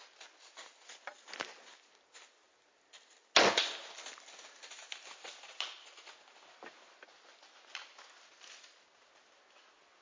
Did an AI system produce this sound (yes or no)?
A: no